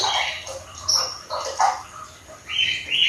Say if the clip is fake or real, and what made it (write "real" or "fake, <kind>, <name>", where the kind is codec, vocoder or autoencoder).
real